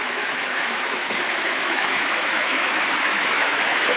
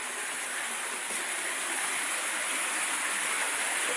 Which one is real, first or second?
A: second